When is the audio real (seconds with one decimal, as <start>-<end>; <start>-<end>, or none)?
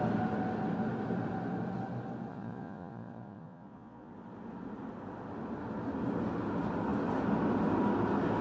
0.0-2.3; 4.1-8.4